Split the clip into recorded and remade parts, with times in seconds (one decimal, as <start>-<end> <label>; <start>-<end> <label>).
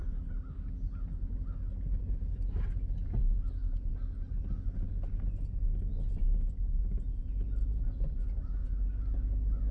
0.0-9.7 recorded